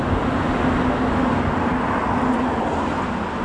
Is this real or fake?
real